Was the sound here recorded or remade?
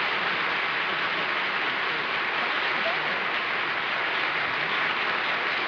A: recorded